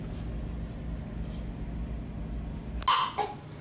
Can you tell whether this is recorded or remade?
recorded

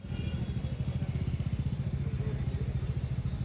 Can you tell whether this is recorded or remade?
recorded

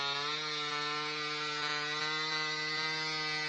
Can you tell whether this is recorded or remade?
recorded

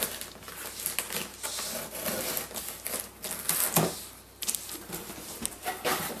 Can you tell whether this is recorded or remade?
recorded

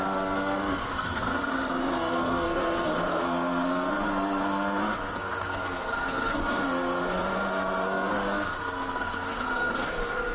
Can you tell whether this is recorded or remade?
remade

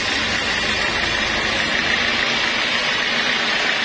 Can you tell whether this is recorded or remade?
recorded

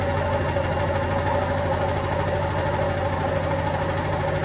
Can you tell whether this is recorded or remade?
recorded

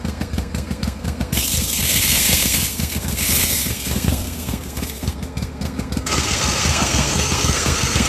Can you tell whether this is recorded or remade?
remade